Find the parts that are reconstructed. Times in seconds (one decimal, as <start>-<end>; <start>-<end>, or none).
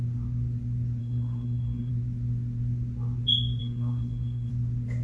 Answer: 1.0-1.9; 3.6-4.5